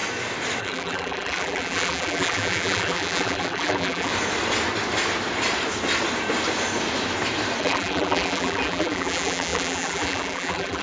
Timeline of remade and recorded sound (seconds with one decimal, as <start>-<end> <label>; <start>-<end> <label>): 0.0-0.6 recorded; 0.6-4.1 remade; 4.1-7.6 recorded; 7.6-10.8 remade